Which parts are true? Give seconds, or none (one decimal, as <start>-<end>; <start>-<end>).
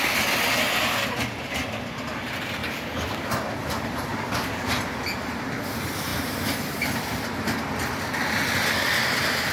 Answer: 0.0-2.6; 3.3-4.1; 4.7-9.5